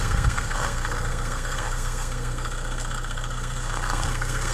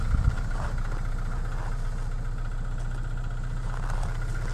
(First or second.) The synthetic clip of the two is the first